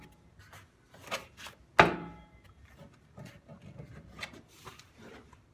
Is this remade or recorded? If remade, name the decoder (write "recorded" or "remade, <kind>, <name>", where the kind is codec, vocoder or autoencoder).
recorded